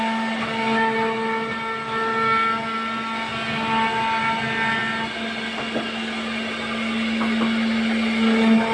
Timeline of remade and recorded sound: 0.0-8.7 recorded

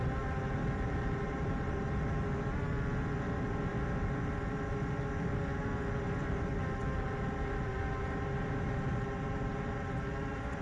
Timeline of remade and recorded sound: 0.0-10.6 recorded

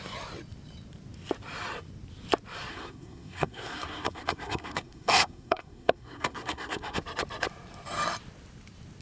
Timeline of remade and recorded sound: 0.0-2.7 recorded; 2.7-7.0 remade; 7.0-9.0 recorded

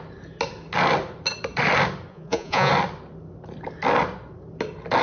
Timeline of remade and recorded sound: 0.0-2.1 recorded; 2.1-2.7 remade; 2.7-5.0 recorded

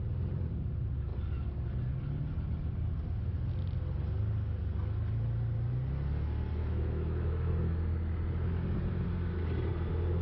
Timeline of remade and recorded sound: 0.0-6.6 recorded; 6.6-7.5 remade; 7.5-10.2 recorded

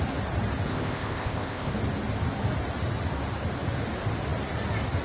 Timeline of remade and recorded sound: 0.0-0.7 recorded; 0.7-1.7 remade; 1.7-5.0 recorded

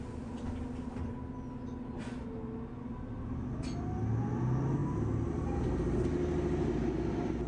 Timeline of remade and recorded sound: 0.0-7.5 recorded

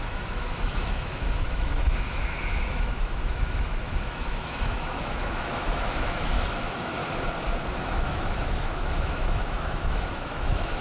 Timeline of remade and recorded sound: 0.0-7.0 remade; 7.0-7.8 recorded; 7.8-10.8 remade